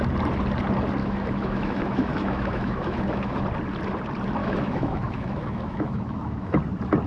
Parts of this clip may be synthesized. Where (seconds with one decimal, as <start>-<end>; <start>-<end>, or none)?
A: 1.0-3.4; 4.4-6.6